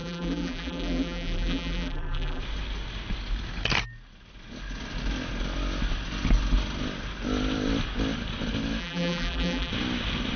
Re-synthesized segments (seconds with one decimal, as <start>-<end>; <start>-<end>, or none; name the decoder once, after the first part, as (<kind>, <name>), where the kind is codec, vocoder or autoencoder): 0.0-2.4 (vocoder, BigVGAN v2); 8.8-9.7